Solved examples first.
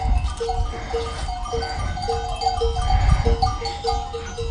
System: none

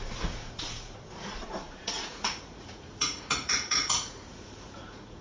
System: vocoder, Vocos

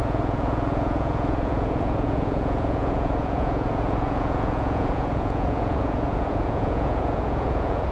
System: vocoder, Vocos